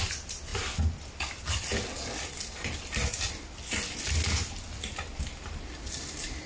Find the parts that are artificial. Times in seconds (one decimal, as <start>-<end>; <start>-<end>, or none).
none